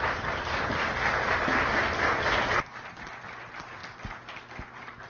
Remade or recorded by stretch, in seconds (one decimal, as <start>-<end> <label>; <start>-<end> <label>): 0.0-5.1 recorded